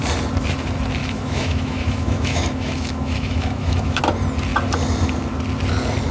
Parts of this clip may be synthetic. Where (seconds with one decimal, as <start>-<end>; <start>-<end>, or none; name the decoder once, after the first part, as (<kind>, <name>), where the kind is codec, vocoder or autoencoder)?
1.0-4.0 (autoencoder, DAC-VAE)